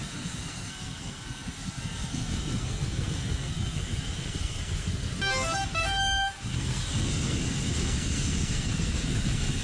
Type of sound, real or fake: fake